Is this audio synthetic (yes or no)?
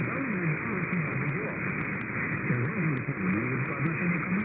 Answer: no